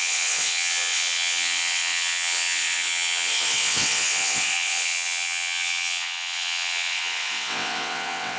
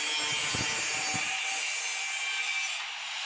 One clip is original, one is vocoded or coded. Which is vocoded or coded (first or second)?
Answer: first